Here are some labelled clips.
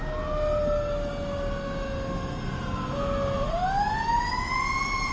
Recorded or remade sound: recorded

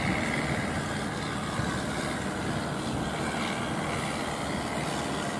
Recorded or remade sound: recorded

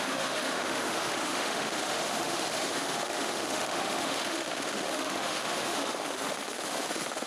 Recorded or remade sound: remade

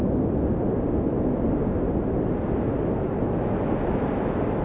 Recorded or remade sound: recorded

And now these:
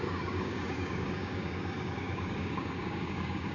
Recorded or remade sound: remade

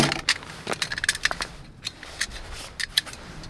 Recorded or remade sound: recorded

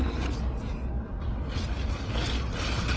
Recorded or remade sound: recorded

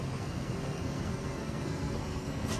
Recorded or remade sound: remade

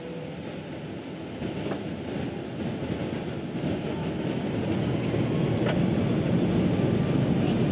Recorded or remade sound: recorded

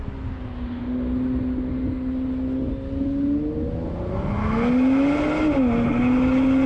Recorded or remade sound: recorded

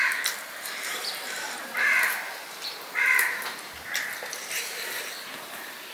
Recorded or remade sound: remade